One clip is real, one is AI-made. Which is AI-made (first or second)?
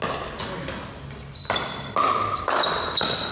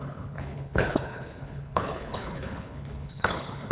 second